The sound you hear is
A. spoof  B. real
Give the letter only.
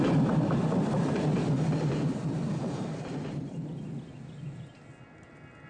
B